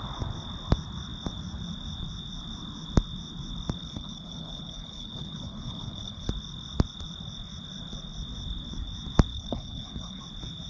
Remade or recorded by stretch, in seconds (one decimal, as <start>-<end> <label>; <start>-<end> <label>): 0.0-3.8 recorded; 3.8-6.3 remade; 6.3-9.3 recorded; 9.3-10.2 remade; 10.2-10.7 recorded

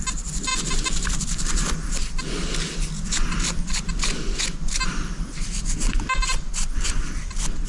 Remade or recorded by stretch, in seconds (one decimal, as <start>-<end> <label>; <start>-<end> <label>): 0.0-0.5 recorded; 0.5-2.8 remade; 2.8-4.6 recorded; 4.6-5.3 remade; 5.3-6.5 recorded; 6.5-7.1 remade; 7.1-7.7 recorded

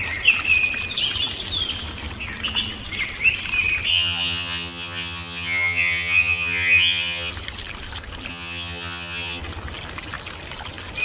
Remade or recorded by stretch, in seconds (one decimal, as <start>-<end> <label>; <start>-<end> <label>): 0.0-3.9 recorded; 3.9-7.3 remade; 7.3-8.3 recorded; 8.3-9.4 remade; 9.4-11.0 recorded

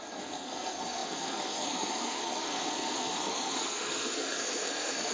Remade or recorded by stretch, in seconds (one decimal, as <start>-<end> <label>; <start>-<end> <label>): 0.0-5.1 remade

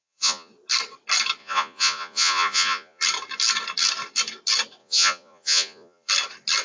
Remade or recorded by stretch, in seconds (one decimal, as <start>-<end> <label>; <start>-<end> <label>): 0.0-0.5 remade; 0.5-1.4 recorded; 1.4-3.0 remade; 3.0-4.8 recorded; 4.8-6.1 remade; 6.1-6.6 recorded

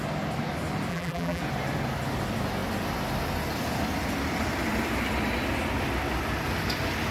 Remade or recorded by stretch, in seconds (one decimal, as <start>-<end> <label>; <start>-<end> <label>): 0.0-0.9 recorded; 0.9-1.4 remade; 1.4-7.1 recorded

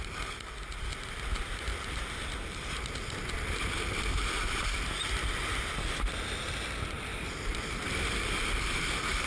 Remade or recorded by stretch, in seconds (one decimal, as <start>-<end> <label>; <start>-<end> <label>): 0.0-0.9 recorded; 0.9-5.6 remade; 5.6-7.1 recorded; 7.1-7.7 remade; 7.7-9.3 recorded

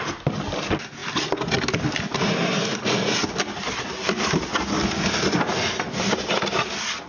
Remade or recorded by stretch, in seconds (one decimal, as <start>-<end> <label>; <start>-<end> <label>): 0.0-7.1 recorded